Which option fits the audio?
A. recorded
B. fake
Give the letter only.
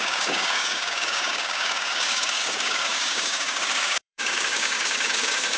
B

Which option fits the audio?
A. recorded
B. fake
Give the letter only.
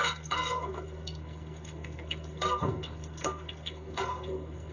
B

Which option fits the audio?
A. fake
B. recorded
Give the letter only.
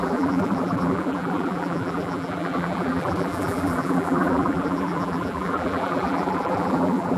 A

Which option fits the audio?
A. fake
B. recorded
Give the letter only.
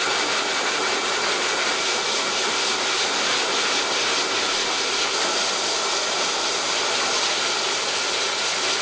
B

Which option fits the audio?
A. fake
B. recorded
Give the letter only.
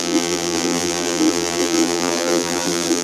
A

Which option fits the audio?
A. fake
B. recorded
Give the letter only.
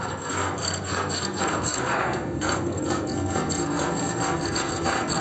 A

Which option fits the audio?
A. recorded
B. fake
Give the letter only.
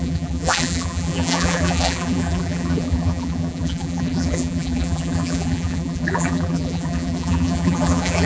B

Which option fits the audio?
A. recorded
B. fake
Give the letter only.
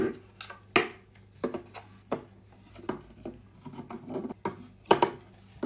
A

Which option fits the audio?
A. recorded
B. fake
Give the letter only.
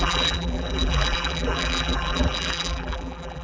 B